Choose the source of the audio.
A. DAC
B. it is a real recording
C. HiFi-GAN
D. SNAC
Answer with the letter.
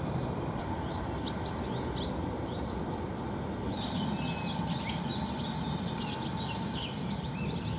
B